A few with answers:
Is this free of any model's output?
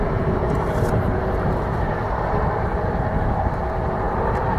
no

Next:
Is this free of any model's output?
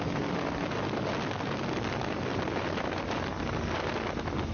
yes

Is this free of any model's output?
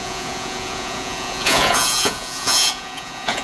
no